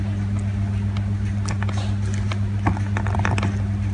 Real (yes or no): yes